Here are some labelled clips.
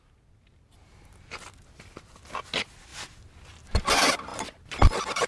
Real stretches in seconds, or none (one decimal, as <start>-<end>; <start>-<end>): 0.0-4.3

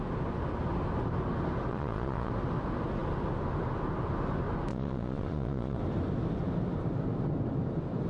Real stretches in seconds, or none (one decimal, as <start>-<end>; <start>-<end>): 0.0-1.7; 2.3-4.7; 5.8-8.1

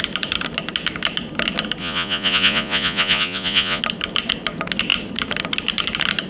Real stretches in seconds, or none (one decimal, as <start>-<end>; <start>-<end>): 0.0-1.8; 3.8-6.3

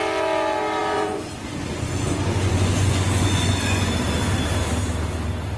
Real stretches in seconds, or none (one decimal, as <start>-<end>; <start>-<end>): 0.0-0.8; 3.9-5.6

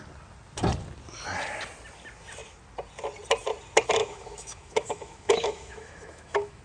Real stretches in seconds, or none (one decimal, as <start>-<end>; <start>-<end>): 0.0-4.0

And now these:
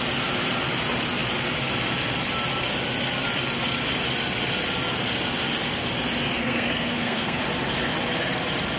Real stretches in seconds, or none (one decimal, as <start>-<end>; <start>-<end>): 0.0-6.4; 7.4-8.8

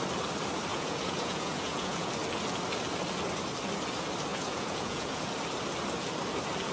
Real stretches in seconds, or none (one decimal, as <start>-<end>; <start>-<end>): 0.0-0.7; 2.1-4.3; 5.2-6.7